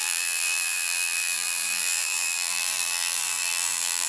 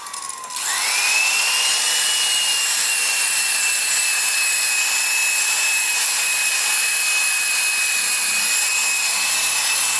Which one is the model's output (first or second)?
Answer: first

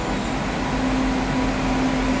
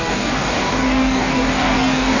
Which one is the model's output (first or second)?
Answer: second